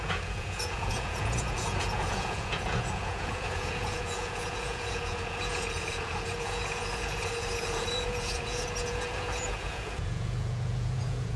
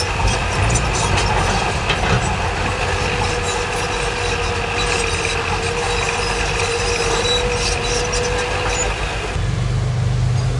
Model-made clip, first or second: first